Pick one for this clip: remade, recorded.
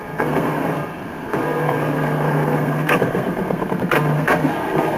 remade